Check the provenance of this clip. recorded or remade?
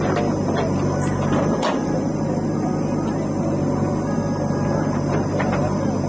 recorded